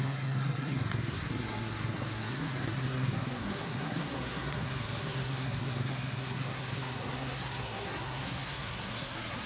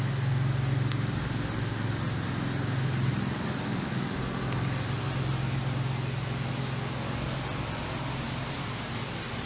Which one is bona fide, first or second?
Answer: second